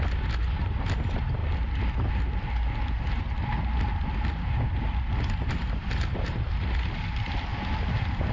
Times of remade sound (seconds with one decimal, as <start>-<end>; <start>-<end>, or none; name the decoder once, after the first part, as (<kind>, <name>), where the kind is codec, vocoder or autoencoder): none